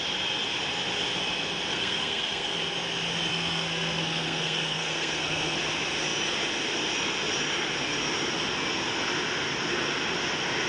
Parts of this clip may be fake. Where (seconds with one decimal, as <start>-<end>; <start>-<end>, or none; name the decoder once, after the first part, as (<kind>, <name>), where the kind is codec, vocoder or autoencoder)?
1.7-2.6 (codec, SNAC); 3.3-5.6